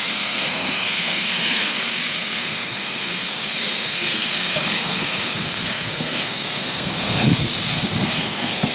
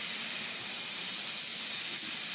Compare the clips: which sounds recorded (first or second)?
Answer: second